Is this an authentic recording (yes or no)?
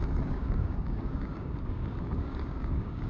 no